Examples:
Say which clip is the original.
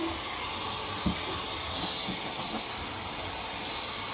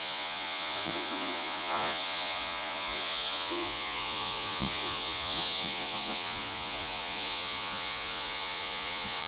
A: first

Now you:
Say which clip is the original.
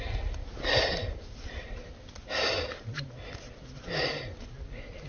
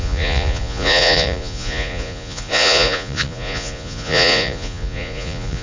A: first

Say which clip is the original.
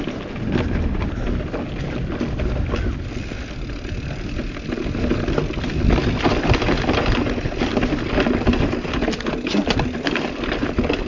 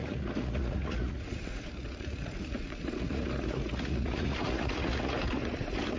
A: first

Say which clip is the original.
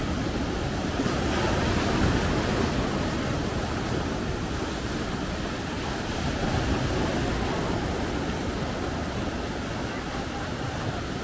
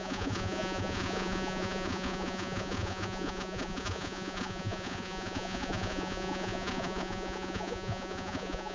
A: first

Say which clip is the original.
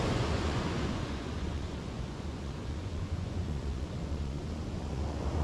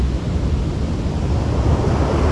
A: second